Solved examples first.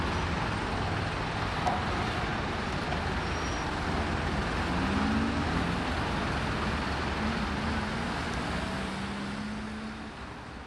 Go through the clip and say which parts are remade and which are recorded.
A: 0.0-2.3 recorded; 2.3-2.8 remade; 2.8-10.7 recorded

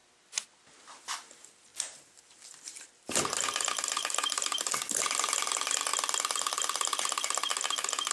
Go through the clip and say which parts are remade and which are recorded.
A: 0.0-0.8 recorded; 0.8-5.9 remade; 5.9-8.1 recorded